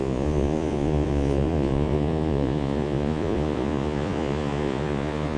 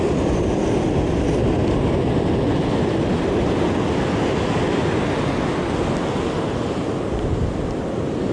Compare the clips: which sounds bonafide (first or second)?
second